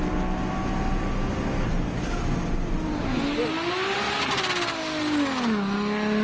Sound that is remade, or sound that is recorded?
recorded